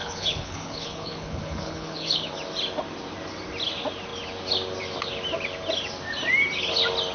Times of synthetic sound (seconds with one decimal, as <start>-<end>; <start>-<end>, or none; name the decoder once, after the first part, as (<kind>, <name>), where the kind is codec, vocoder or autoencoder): 0.0-2.3 (codec, HILCodec)